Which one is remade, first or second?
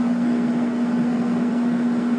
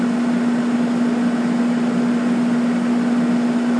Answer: first